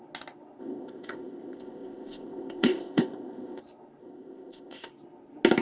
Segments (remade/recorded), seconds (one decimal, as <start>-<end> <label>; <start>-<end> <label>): 0.0-0.6 recorded; 0.6-3.6 remade; 3.6-4.0 recorded; 4.0-4.9 remade; 4.9-5.6 recorded